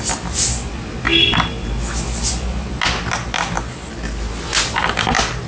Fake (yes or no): no